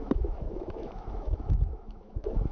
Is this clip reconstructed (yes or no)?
yes